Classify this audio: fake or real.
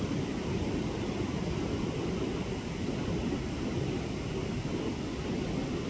real